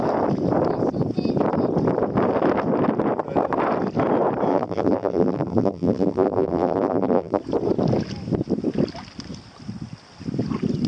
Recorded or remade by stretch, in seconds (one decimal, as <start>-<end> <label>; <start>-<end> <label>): 0.0-4.5 recorded; 4.5-7.4 remade; 7.4-10.9 recorded